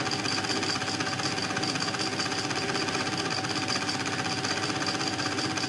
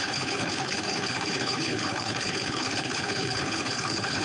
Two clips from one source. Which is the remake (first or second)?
second